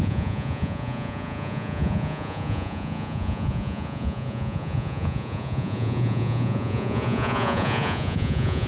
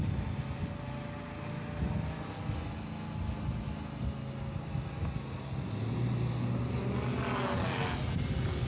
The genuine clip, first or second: second